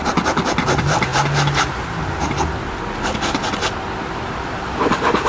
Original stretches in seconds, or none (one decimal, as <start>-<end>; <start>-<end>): 0.0-5.3